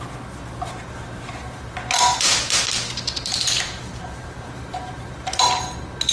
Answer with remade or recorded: recorded